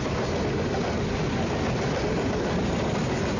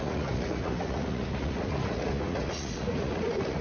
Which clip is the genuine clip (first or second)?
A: first